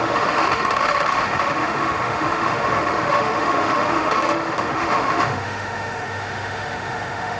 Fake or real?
fake